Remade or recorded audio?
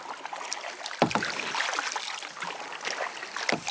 recorded